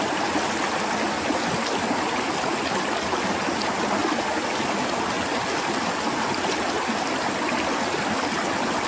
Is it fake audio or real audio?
real